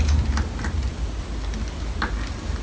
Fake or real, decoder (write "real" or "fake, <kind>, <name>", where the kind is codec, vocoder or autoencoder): real